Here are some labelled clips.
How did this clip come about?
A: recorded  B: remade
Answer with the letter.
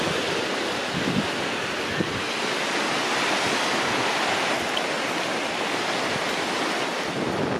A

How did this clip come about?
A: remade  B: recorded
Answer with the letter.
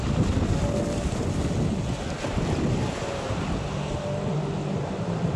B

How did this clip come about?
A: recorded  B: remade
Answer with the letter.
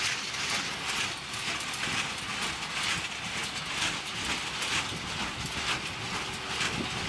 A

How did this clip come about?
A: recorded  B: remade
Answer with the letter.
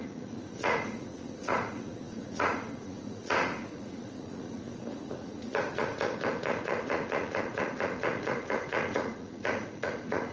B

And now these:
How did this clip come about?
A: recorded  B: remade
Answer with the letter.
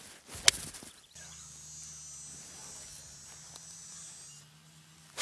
A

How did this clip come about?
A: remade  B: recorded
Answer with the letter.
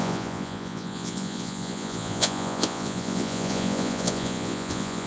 A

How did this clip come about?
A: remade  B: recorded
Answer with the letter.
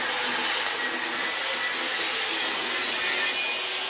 B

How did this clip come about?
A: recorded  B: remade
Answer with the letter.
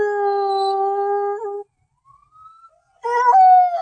A